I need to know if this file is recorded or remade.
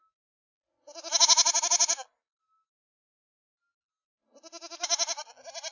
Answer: recorded